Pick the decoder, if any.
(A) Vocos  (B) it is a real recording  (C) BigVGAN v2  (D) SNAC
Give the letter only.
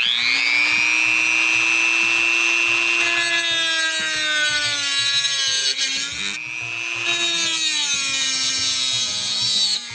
B